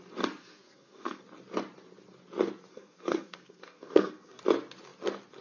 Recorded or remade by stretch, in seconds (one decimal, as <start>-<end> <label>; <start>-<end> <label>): 0.0-0.4 recorded; 0.4-1.2 remade; 1.2-2.7 recorded; 2.7-4.4 remade; 4.4-5.4 recorded

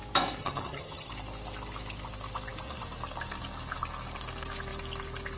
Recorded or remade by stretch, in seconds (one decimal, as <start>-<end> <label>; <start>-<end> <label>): 0.0-0.4 recorded; 0.4-1.1 remade; 1.1-5.4 recorded

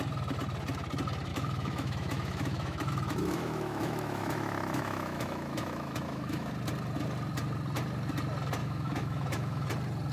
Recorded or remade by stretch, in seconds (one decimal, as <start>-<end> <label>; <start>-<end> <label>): 0.0-1.3 recorded; 1.3-6.5 remade; 6.5-8.6 recorded; 8.6-9.7 remade; 9.7-10.1 recorded